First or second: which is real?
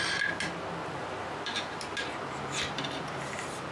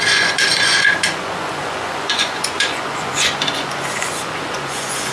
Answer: first